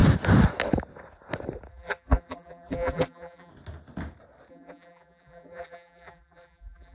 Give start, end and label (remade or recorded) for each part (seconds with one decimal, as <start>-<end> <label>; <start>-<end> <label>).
0.0-1.7 recorded; 1.7-3.5 remade; 3.5-4.5 recorded; 4.5-6.9 remade